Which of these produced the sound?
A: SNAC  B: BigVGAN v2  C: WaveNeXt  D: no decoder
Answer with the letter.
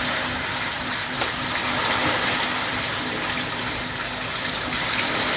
D